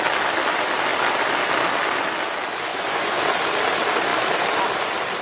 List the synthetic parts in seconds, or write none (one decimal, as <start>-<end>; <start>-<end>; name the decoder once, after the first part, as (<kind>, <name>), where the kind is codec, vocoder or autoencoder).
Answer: 2.7-3.2 (vocoder, Vocos)